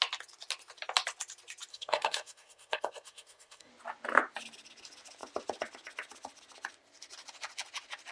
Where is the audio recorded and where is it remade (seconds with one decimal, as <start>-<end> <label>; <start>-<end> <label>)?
0.0-1.7 recorded; 1.7-3.7 remade; 3.7-8.1 recorded